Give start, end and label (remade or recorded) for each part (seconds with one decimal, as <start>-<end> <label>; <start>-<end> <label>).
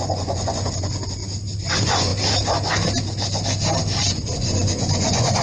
0.0-1.2 remade; 1.2-1.7 recorded; 1.7-2.1 remade; 2.1-4.0 recorded; 4.0-5.4 remade